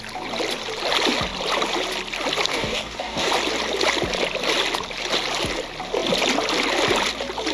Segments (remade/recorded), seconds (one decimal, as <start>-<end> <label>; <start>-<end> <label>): 0.0-2.5 recorded; 2.5-3.3 remade; 3.3-7.5 recorded